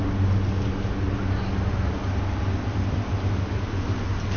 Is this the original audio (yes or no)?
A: yes